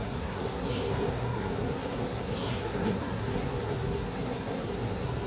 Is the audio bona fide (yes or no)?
no